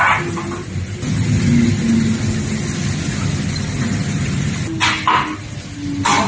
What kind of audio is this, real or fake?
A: real